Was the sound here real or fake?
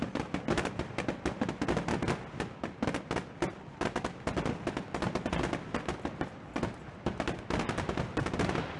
real